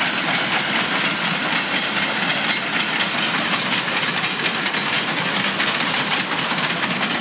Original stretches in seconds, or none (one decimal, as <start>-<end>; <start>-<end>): 0.0-7.2